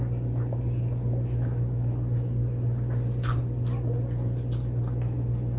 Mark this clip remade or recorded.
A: recorded